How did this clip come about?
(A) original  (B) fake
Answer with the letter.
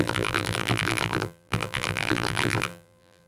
B